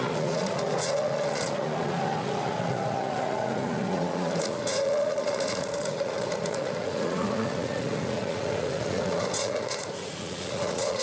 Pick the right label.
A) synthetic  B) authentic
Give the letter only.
A